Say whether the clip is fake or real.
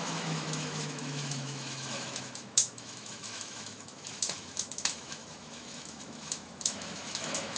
fake